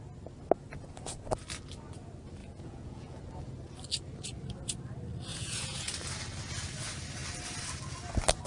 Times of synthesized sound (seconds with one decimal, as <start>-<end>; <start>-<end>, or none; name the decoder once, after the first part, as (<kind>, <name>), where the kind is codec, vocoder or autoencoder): 2.4-3.2 (vocoder, Vocos); 5.3-5.9